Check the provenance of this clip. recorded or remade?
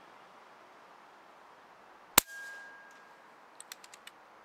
recorded